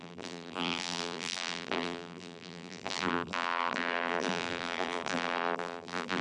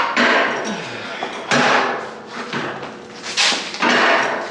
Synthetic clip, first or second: first